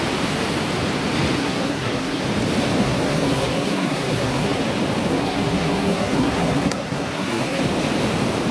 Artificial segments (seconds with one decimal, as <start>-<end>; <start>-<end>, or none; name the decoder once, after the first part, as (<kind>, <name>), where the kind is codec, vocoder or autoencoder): 1.4-2.2 (codec, SNAC); 2.8-4.6; 5.1-7.6